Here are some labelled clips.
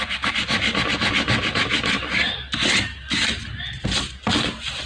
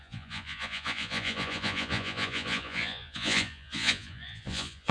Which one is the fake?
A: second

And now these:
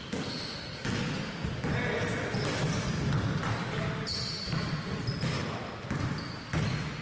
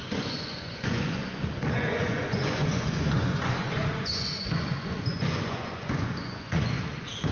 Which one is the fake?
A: second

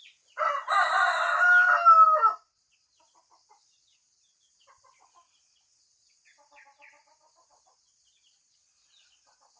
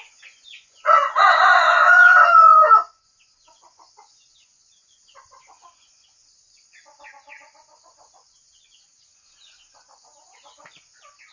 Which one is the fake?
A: second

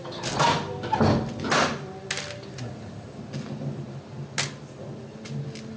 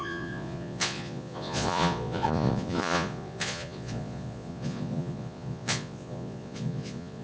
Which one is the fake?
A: second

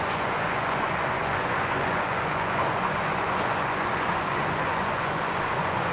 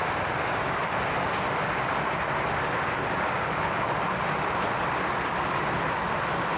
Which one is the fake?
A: first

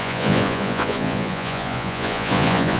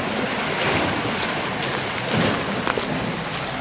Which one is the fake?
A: first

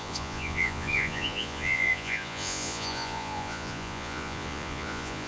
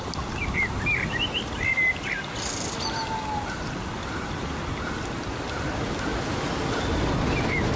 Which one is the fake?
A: first